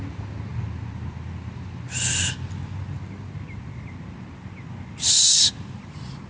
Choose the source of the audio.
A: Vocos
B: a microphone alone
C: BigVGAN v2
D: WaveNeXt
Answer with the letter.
B